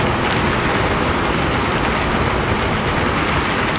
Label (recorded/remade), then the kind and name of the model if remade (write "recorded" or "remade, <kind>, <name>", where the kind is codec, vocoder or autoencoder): recorded